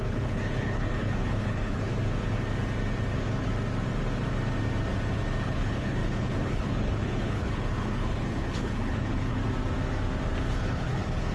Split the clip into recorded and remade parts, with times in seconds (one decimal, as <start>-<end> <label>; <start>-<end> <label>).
0.0-1.9 remade; 1.9-3.1 recorded; 3.1-3.5 remade; 3.5-5.4 recorded; 5.4-9.4 remade; 9.4-10.5 recorded; 10.5-11.3 remade

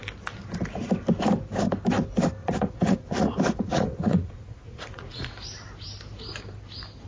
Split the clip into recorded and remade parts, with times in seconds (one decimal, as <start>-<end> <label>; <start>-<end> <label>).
0.0-2.4 recorded; 2.4-5.3 remade; 5.3-7.1 recorded

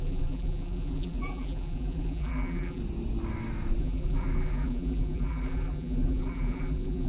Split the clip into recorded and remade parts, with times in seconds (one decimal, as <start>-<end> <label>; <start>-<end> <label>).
0.0-2.8 remade; 2.8-3.8 recorded; 3.8-7.1 remade

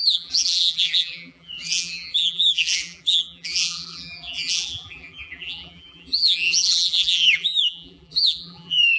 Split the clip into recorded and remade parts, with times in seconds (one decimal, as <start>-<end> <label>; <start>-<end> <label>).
0.0-9.0 remade

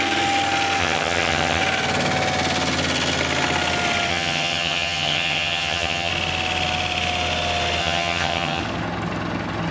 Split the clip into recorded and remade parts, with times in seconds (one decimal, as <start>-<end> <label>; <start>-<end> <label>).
0.0-0.8 recorded; 0.8-1.6 remade; 1.6-4.1 recorded; 4.1-6.1 remade; 6.1-7.8 recorded; 7.8-8.6 remade; 8.6-9.7 recorded

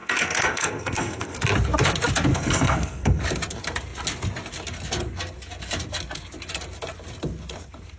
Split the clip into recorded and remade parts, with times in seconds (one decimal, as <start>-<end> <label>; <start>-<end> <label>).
0.0-1.4 remade; 1.4-2.3 recorded; 2.3-3.2 remade; 3.2-8.0 recorded